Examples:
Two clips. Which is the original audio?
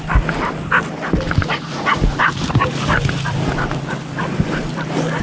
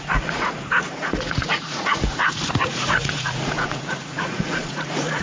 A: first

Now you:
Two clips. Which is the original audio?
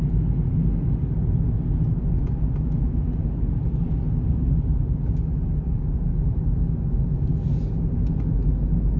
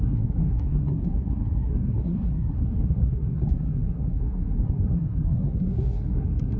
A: first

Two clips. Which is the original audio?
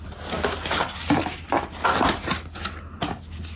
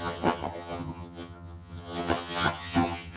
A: first